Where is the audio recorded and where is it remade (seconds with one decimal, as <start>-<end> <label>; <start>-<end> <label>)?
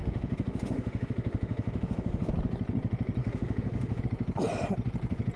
0.0-2.3 remade; 2.3-3.2 recorded; 3.2-4.0 remade; 4.0-5.4 recorded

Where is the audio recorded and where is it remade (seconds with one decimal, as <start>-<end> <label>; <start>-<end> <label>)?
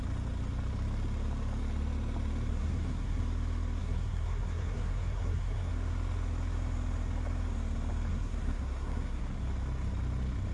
0.0-2.5 recorded; 2.5-3.2 remade; 3.2-3.8 recorded; 3.8-5.7 remade; 5.7-8.1 recorded; 8.1-9.2 remade; 9.2-10.5 recorded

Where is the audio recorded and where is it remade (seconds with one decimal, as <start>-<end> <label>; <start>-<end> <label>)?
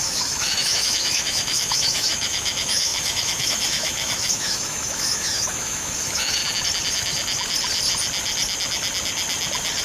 0.0-6.4 remade; 6.4-9.8 recorded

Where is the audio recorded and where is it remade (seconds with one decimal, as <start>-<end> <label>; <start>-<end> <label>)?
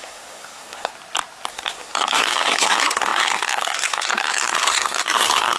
0.0-0.9 remade; 0.9-1.5 recorded; 1.5-5.6 remade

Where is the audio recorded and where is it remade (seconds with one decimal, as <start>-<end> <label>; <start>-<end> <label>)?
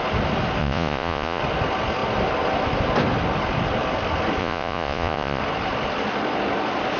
0.0-0.6 recorded; 0.6-1.4 remade; 1.4-4.4 recorded; 4.4-5.4 remade; 5.4-7.0 recorded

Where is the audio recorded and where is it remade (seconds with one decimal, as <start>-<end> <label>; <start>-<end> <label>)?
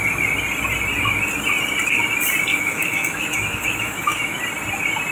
0.0-2.5 recorded; 2.5-4.4 remade; 4.4-5.1 recorded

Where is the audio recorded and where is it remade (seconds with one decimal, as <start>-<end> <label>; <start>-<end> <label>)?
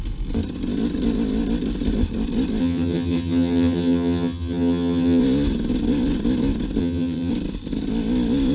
0.0-2.6 recorded; 2.6-5.2 remade; 5.2-6.8 recorded; 6.8-7.3 remade; 7.3-8.5 recorded